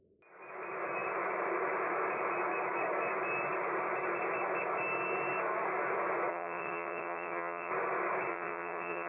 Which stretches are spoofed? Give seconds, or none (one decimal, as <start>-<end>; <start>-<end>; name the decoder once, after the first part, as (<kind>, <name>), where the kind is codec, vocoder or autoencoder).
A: 6.3-7.7 (vocoder, WaveNeXt); 8.3-9.1